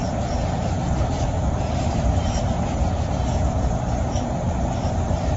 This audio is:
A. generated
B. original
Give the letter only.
A